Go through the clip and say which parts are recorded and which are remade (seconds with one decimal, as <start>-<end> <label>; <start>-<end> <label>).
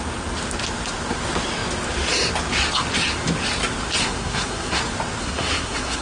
0.0-4.0 recorded; 4.0-4.8 remade; 4.8-5.2 recorded; 5.2-6.0 remade